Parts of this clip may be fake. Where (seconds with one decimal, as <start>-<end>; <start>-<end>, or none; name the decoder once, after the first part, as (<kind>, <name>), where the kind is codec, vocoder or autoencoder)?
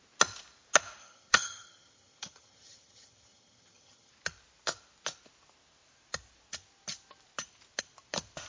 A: 1.0-4.1 (vocoder, HiFi-GAN)